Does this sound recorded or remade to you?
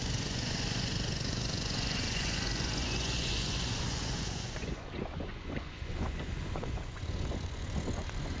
remade